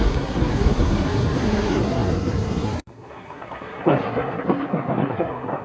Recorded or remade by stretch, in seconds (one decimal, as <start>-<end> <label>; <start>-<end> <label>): 0.0-5.6 remade